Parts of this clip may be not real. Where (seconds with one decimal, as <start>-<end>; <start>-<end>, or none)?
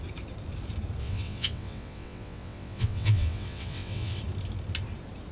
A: 1.0-4.2